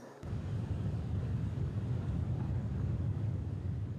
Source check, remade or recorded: remade